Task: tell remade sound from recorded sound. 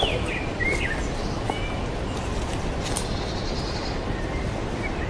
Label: recorded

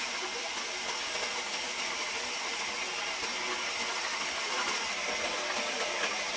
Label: recorded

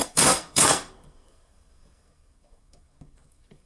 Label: remade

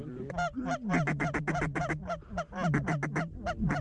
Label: recorded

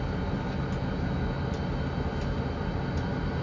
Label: recorded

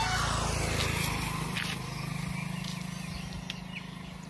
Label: recorded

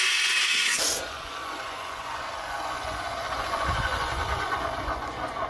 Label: remade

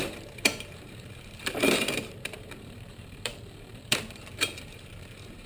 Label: remade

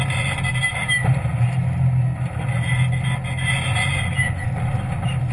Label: recorded